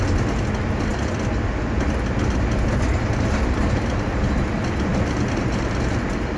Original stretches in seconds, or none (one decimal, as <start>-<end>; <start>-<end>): 0.0-4.9; 5.9-6.4